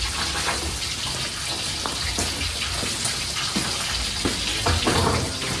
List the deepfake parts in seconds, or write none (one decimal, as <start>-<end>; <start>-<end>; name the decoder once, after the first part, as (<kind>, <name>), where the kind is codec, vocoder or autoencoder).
none